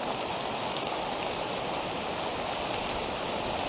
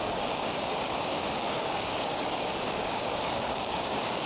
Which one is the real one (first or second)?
first